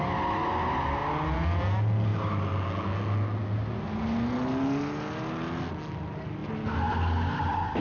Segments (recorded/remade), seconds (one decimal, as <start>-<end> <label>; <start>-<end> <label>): 0.0-7.8 recorded